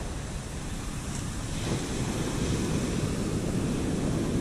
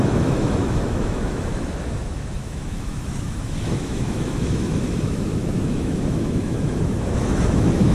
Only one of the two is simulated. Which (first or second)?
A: second